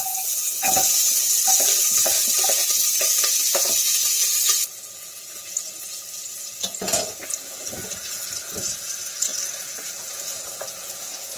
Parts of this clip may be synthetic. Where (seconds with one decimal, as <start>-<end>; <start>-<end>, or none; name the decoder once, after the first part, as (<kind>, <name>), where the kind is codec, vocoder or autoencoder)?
0.0-1.4 (vocoder, Vocos); 3.5-11.4